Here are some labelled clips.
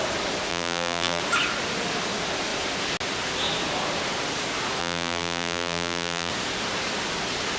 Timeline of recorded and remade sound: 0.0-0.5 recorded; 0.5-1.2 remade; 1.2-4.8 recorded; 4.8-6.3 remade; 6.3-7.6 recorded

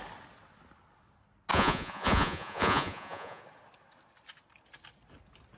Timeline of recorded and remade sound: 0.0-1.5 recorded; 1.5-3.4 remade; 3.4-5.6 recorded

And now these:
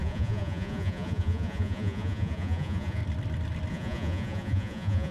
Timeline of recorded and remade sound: 0.0-3.0 remade; 3.0-3.7 recorded; 3.7-5.1 remade

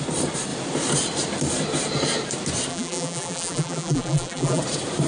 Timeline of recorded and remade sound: 0.0-2.7 recorded; 2.7-4.6 remade; 4.6-5.1 recorded

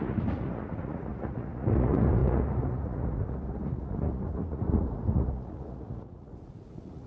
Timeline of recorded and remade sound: 0.0-7.1 remade

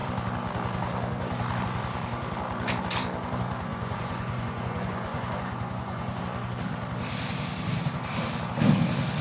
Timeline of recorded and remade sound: 0.0-3.7 recorded; 3.7-6.2 remade; 6.2-9.2 recorded